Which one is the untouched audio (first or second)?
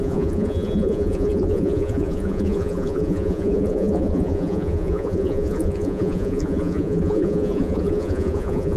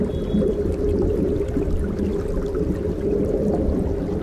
second